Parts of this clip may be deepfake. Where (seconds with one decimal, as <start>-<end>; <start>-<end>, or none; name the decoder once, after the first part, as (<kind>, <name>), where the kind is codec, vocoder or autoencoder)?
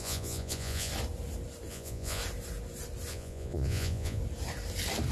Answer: 0.0-0.9 (vocoder, Vocos); 1.7-2.2; 3.1-4.2